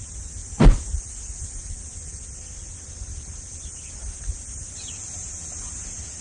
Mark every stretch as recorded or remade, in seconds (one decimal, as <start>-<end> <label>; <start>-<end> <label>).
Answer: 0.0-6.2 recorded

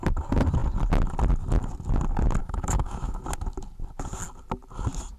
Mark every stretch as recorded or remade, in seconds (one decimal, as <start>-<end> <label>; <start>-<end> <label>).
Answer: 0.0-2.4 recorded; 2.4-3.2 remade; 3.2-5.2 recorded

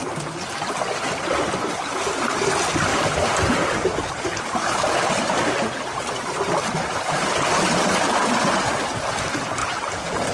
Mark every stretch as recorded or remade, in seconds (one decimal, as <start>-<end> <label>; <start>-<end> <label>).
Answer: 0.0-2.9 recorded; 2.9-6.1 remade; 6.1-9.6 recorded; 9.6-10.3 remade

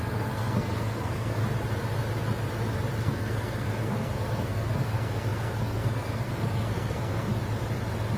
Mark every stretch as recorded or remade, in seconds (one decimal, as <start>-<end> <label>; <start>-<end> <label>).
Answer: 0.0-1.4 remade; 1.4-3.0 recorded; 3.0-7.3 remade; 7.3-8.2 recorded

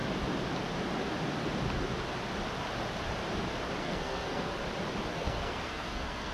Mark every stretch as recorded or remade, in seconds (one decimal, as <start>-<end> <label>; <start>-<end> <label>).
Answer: 0.0-3.8 recorded; 3.8-4.6 remade; 4.6-5.1 recorded; 5.1-6.3 remade

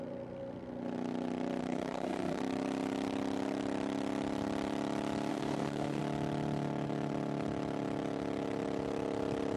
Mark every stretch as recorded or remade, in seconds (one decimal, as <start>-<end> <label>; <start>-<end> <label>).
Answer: 0.0-1.6 recorded; 1.6-2.4 remade; 2.4-5.3 recorded; 5.3-6.0 remade; 6.0-9.6 recorded